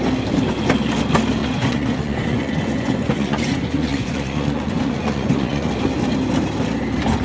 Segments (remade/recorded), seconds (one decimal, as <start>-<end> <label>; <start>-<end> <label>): 0.0-1.4 recorded; 1.4-5.7 remade; 5.7-7.2 recorded